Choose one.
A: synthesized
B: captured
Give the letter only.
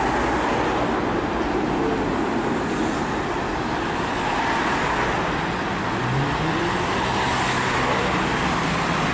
B